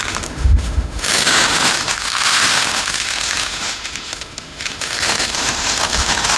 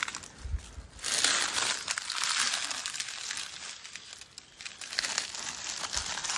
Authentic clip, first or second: second